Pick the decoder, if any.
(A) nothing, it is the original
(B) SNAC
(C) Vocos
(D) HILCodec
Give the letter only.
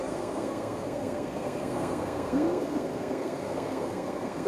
B